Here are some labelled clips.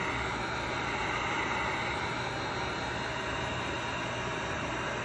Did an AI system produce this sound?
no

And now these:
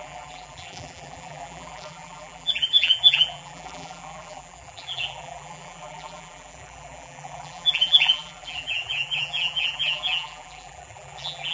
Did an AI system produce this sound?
yes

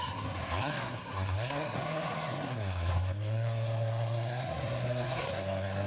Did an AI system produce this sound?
yes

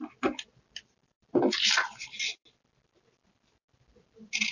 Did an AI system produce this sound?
no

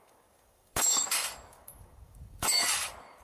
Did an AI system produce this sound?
yes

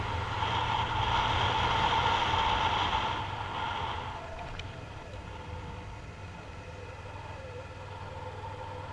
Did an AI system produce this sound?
no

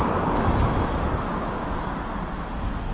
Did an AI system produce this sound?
no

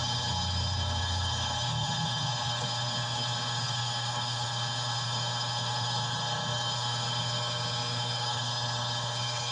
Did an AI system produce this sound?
yes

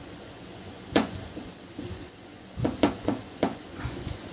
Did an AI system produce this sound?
yes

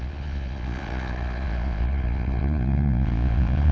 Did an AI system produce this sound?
yes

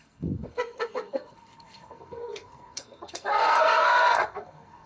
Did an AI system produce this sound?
yes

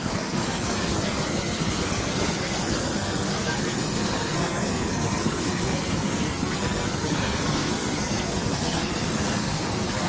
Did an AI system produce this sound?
yes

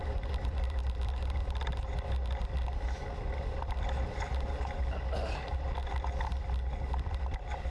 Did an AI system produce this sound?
no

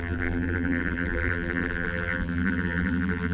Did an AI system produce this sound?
yes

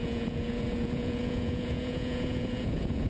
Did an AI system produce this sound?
yes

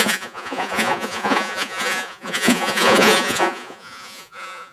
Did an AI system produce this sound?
yes